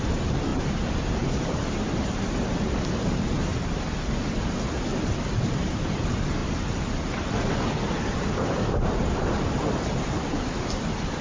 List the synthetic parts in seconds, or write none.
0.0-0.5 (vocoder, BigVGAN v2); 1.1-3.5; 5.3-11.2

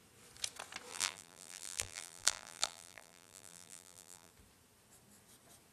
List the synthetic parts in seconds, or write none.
0.9-4.3 (vocoder, BigVGAN v2)

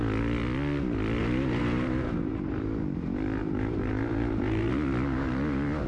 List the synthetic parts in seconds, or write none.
1.2-2.3 (vocoder, BigVGAN v2); 3.4-4.7